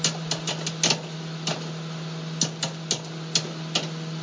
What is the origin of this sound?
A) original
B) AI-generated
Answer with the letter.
A